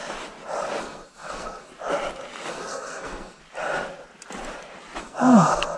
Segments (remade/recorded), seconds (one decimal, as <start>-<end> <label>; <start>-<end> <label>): 0.0-0.8 recorded; 0.8-1.7 remade; 1.7-2.5 recorded; 2.5-3.4 remade; 3.4-5.0 recorded; 5.0-5.8 remade